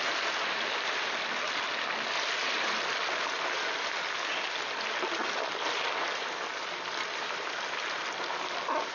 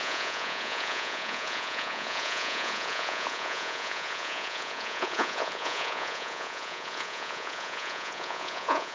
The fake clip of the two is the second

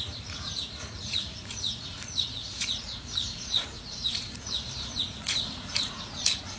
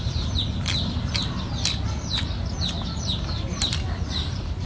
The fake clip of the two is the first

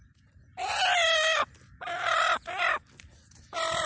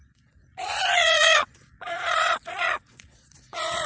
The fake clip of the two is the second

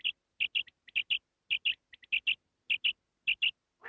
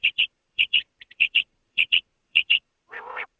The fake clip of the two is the second